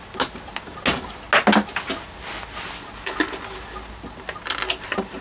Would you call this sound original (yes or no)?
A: yes